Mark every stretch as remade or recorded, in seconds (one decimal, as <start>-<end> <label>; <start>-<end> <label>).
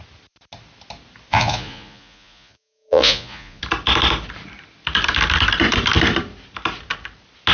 0.0-1.3 recorded; 1.3-3.6 remade; 3.6-7.5 recorded